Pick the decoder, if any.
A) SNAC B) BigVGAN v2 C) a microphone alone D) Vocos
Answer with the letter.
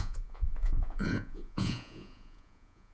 D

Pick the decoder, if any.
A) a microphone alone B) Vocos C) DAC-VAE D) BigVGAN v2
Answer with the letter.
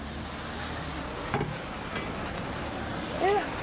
A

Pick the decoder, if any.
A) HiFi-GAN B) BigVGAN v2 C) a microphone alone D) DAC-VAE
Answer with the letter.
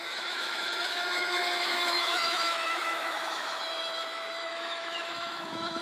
D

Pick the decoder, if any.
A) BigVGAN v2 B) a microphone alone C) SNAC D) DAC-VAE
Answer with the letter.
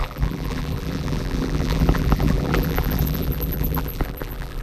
A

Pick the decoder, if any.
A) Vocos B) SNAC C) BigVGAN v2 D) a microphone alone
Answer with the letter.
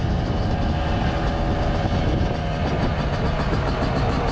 C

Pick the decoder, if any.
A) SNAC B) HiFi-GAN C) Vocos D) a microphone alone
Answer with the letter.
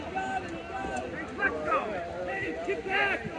D